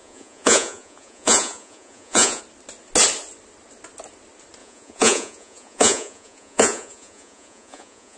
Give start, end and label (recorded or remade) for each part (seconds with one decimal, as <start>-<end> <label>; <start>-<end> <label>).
0.0-2.4 remade; 2.4-4.6 recorded; 4.6-8.2 remade